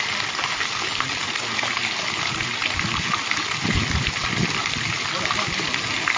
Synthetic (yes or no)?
no